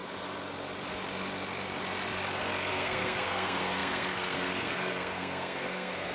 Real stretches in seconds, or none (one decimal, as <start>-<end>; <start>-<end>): 0.0-2.7